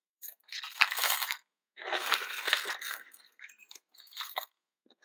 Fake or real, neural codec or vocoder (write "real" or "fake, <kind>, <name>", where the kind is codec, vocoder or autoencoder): fake, codec, SNAC